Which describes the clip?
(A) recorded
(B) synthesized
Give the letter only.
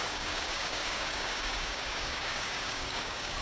B